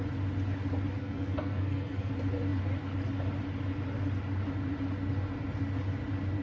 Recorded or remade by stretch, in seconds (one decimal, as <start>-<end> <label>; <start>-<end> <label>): 0.0-1.0 recorded; 1.0-2.1 remade; 2.1-6.4 recorded